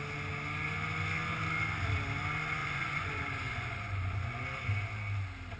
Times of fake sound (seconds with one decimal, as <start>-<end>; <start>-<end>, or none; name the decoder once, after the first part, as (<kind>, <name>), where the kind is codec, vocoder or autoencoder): 2.6-4.4 (vocoder, Vocos)